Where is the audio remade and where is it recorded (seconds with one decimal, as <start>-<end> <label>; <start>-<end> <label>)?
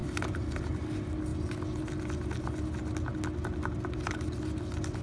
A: 0.0-5.0 recorded